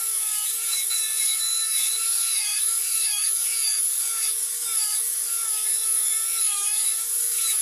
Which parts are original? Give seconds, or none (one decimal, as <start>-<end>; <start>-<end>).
none